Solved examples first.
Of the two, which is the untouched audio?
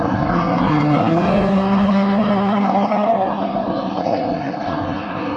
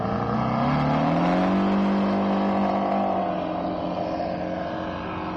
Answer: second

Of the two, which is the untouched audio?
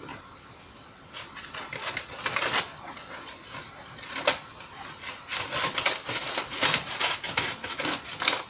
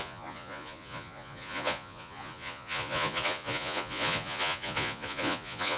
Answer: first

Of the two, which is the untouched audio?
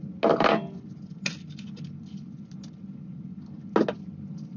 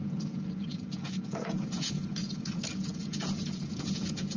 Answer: first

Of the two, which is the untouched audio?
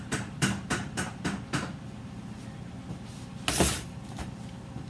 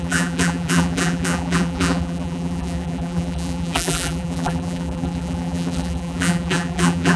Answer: first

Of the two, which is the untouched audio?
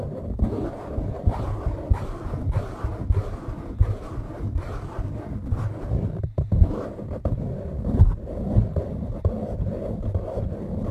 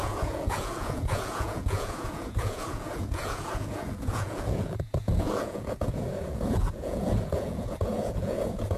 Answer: first